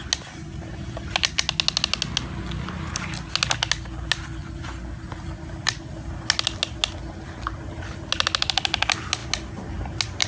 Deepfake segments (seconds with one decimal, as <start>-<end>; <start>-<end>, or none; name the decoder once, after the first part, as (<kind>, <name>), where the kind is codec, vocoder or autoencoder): none